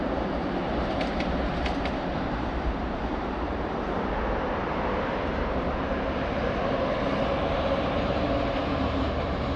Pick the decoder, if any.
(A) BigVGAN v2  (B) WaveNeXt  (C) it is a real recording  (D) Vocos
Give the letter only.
A